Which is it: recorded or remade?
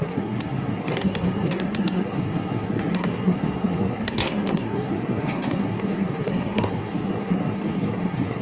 remade